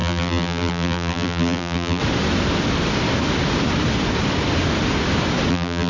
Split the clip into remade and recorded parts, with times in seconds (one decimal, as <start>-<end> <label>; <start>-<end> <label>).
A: 0.0-2.0 remade; 2.0-5.5 recorded; 5.5-5.9 remade